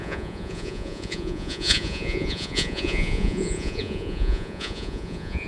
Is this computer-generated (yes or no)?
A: yes